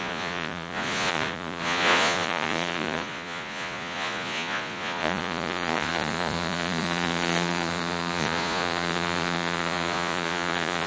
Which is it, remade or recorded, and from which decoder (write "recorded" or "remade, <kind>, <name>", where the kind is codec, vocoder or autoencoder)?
remade, vocoder, Vocos